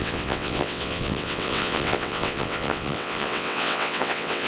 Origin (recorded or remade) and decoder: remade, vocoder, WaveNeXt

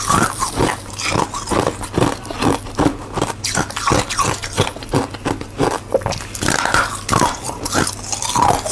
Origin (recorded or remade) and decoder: recorded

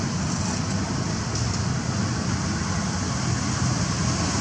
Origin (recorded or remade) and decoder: recorded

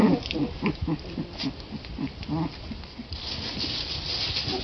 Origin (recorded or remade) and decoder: recorded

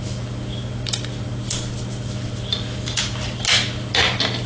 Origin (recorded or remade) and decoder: recorded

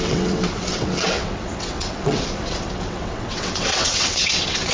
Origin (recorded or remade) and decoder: remade, vocoder, WaveNeXt